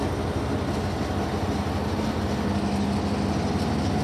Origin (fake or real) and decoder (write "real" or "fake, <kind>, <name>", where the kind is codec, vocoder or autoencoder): real